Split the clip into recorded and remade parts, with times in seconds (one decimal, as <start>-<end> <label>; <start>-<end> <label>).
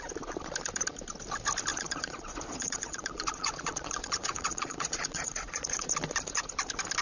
0.0-1.7 recorded; 1.7-5.9 remade; 5.9-7.0 recorded